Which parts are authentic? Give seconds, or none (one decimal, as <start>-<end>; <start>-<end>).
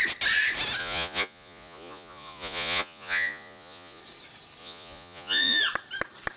0.0-0.8; 4.0-4.6; 5.6-6.4